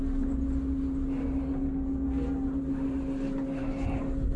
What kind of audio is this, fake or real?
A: real